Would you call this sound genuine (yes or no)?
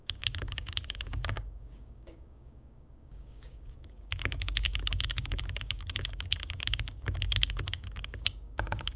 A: no